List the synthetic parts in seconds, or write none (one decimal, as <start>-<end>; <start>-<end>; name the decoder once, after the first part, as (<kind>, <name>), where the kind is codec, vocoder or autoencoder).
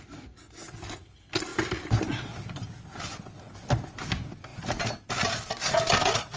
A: none